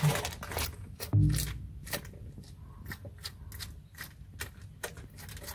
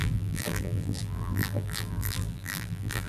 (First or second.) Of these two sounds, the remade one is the second